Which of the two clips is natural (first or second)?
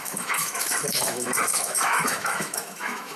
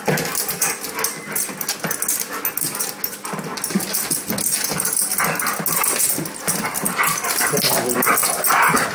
second